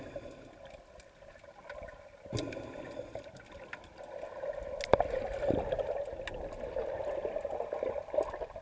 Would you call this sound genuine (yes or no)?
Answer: yes